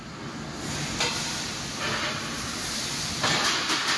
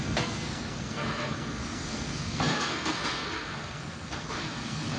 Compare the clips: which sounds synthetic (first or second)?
second